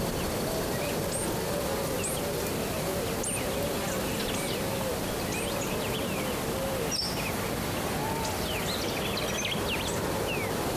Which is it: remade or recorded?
recorded